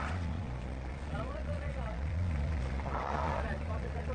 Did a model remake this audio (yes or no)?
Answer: yes